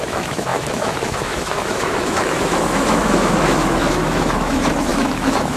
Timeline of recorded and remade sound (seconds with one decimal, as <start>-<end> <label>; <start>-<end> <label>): 0.0-5.6 remade